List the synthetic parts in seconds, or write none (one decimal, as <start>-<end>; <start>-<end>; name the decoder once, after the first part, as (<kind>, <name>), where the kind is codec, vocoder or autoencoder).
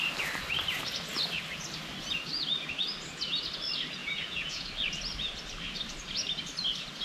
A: 4.0-4.7 (vocoder, Vocos)